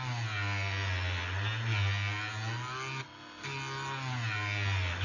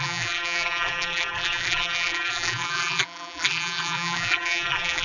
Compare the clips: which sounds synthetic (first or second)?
second